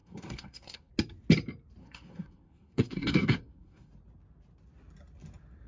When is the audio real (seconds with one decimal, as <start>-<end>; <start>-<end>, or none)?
0.9-1.8; 3.9-5.7